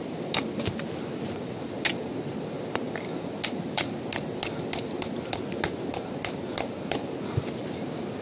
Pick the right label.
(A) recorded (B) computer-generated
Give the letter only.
A